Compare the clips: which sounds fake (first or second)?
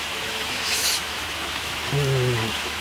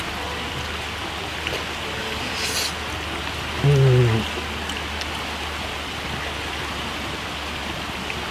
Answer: first